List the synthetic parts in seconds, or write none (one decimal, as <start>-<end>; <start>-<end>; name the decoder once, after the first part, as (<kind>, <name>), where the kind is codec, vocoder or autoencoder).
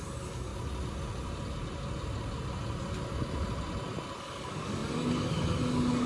0.0-0.5 (codec, DAC); 4.2-6.1